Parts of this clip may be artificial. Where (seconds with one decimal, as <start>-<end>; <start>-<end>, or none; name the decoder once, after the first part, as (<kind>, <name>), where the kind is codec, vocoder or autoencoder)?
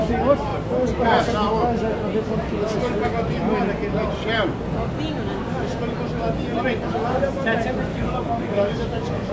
7.9-9.3 (codec, DAC)